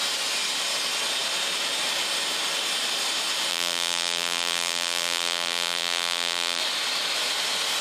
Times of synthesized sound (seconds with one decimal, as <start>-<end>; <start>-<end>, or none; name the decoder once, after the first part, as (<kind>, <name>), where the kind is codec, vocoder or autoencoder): 3.5-6.6 (vocoder, BigVGAN v2)